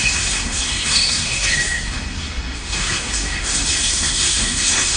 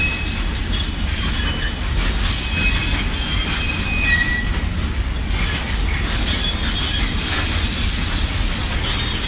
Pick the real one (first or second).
second